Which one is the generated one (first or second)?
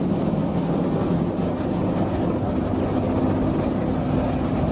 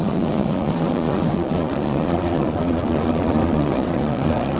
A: second